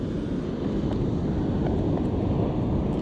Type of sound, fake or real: real